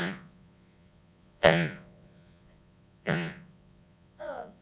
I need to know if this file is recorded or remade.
remade